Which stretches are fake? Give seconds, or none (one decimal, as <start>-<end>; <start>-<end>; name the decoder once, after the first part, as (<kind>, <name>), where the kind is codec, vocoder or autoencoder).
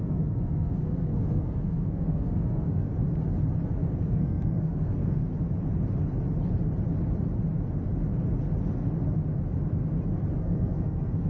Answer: 0.0-2.9 (codec, SNAC); 4.0-5.2; 10.4-11.3